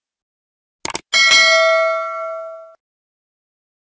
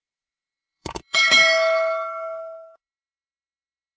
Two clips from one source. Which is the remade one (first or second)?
second